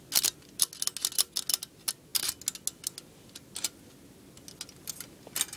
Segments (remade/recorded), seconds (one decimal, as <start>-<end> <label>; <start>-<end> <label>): 0.0-5.6 recorded